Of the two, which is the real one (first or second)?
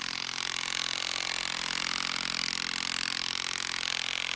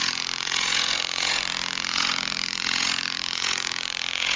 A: first